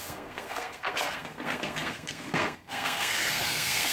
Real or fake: fake